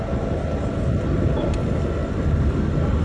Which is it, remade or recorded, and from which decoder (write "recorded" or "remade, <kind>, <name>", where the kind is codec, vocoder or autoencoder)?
recorded